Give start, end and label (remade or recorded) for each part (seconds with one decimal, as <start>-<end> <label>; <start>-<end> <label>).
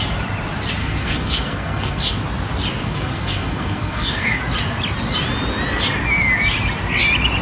0.0-0.8 recorded; 0.8-2.2 remade; 2.2-2.8 recorded; 2.8-4.4 remade; 4.4-7.4 recorded